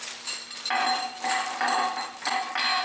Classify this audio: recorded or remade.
recorded